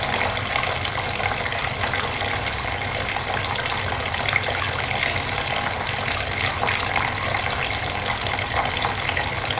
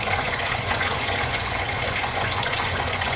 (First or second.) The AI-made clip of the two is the second